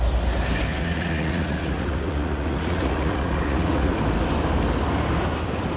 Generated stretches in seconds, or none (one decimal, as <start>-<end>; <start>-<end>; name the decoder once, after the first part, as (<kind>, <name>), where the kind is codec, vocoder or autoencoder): 0.7-3.9 (vocoder, Vocos)